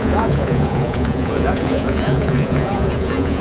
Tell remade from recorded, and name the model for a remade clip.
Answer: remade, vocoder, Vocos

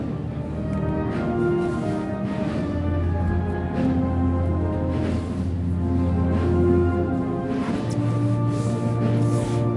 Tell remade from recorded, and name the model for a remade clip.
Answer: recorded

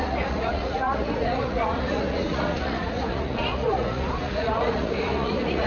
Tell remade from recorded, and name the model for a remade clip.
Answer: remade, vocoder, Vocos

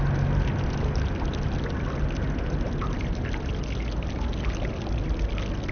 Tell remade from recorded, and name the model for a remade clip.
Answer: recorded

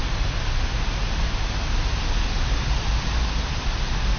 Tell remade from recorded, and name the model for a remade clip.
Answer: recorded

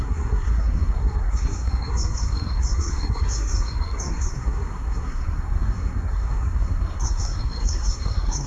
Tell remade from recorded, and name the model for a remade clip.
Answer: remade, codec, SNAC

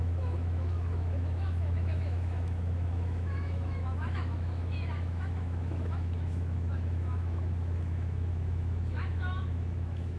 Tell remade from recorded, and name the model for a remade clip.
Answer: remade, autoencoder, DAC-VAE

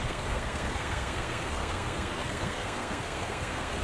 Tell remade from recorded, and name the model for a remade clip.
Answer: remade, codec, SNAC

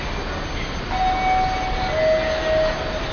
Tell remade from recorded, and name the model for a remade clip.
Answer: recorded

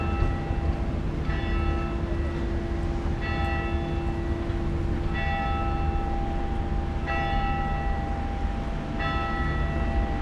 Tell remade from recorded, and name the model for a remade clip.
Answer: recorded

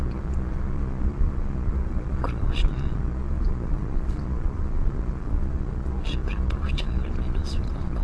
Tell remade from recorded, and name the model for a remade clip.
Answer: remade, vocoder, Vocos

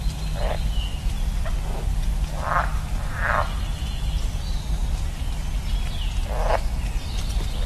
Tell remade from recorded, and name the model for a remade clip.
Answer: recorded